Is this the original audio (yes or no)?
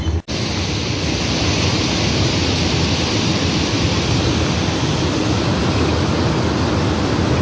yes